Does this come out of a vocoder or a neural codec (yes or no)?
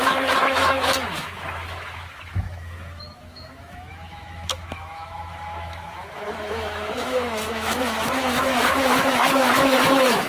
yes